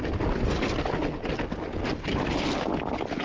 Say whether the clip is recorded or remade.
recorded